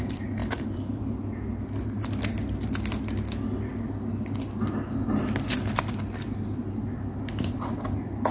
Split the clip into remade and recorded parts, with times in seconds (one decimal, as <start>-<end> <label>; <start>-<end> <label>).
0.0-0.4 recorded; 0.4-1.0 remade; 1.0-8.3 recorded

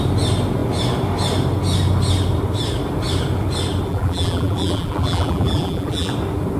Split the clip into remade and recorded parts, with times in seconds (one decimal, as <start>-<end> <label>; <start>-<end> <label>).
0.0-3.9 recorded; 3.9-6.1 remade; 6.1-6.6 recorded

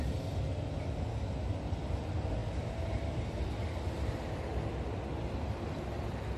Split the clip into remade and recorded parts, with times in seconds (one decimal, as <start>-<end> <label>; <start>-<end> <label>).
0.0-6.4 recorded

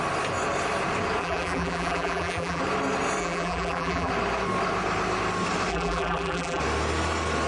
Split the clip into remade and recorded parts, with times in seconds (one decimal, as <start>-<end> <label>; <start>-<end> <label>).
0.0-1.2 recorded; 1.2-2.6 remade; 2.6-3.2 recorded; 3.2-4.1 remade; 4.1-5.7 recorded; 5.7-6.6 remade; 6.6-7.5 recorded

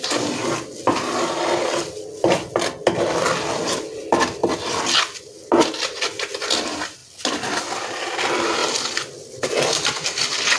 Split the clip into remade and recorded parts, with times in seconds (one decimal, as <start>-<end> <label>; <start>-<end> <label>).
0.0-8.6 recorded; 8.6-9.6 remade; 9.6-10.6 recorded

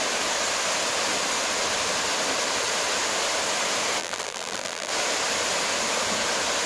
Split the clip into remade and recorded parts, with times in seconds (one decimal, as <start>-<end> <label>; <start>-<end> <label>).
0.0-4.0 recorded; 4.0-4.9 remade; 4.9-6.7 recorded

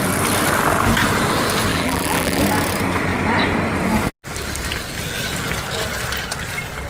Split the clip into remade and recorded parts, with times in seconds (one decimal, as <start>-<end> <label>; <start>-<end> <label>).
0.0-1.7 recorded; 1.7-2.4 remade; 2.4-6.9 recorded